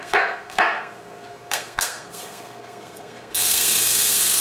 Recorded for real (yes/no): no